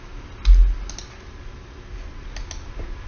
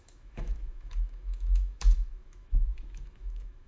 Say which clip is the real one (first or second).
first